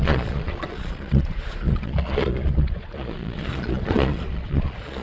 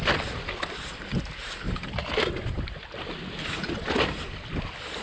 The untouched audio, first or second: second